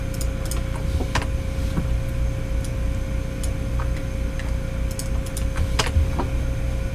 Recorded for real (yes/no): yes